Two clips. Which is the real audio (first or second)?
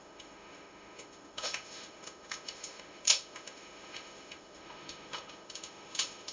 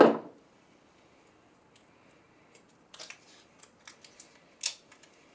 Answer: second